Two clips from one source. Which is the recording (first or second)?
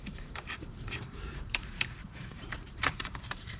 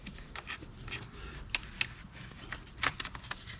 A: second